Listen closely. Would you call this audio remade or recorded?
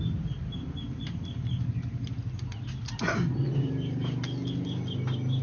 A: recorded